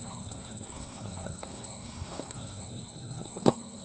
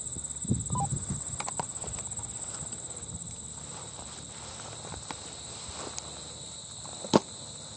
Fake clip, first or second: first